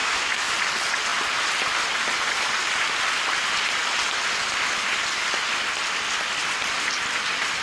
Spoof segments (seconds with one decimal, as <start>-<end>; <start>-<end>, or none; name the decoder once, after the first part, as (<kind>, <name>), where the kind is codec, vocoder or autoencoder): 0.0-0.5 (autoencoder, DAC-VAE)